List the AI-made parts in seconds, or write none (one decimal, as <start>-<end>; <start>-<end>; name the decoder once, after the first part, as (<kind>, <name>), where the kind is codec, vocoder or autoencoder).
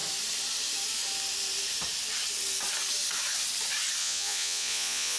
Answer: 4.0-5.2 (vocoder, Vocos)